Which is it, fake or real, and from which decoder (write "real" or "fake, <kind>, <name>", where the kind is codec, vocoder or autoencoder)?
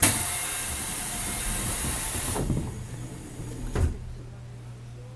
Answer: real